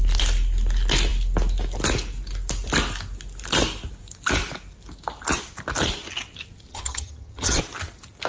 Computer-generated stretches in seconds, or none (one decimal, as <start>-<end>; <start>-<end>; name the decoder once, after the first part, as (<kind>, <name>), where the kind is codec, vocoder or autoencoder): 6.7-7.6 (vocoder, HiFi-GAN)